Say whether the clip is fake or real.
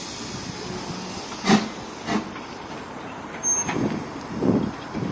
real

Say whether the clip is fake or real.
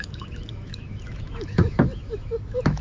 fake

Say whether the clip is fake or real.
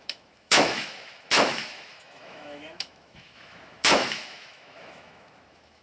fake